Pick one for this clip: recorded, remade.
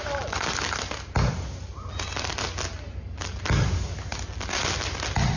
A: recorded